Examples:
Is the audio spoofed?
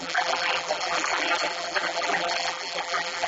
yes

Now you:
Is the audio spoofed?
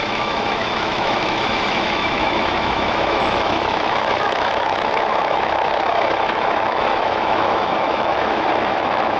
yes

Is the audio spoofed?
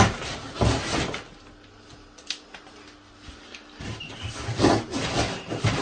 no